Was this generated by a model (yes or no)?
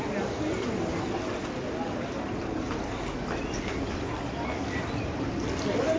no